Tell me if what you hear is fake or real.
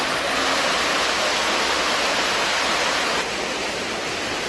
real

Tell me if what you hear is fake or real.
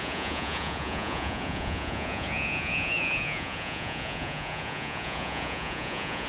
fake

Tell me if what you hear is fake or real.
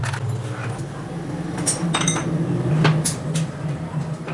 real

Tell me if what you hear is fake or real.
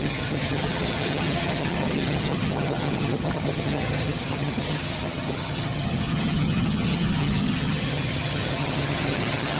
fake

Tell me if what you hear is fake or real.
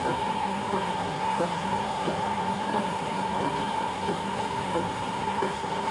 fake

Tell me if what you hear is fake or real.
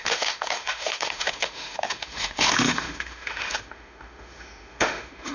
fake